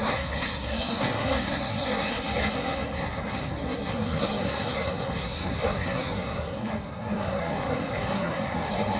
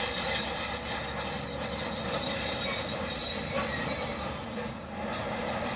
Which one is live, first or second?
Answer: second